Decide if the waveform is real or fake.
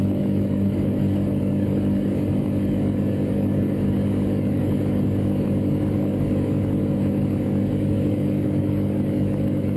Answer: fake